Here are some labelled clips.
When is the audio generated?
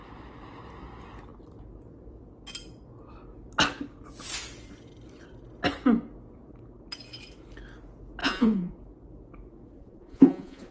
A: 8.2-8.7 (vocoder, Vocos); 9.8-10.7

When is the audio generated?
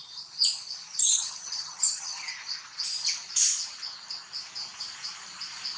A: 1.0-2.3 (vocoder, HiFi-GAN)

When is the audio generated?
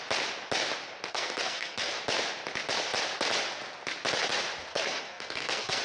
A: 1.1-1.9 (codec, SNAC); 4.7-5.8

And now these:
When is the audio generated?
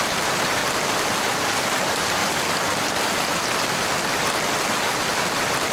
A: 0.0-0.6 (vocoder, BigVGAN v2); 1.7-2.2